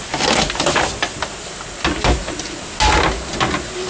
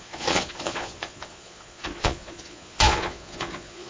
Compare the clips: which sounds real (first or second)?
first